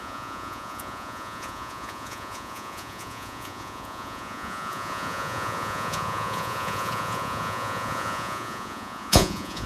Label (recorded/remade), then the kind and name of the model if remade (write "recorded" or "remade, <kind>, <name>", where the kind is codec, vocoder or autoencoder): remade, vocoder, Vocos